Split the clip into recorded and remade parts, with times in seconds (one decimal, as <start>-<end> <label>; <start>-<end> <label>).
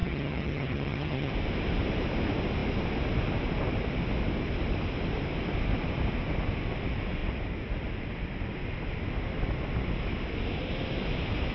0.0-1.3 remade; 1.3-11.5 recorded